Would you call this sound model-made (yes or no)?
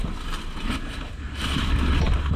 no